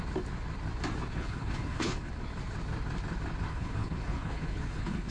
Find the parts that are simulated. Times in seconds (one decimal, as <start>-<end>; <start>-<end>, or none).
1.1-2.1; 3.5-5.1